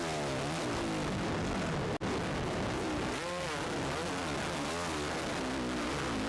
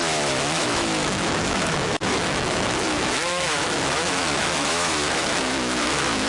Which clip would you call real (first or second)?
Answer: first